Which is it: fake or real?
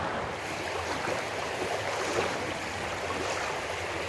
real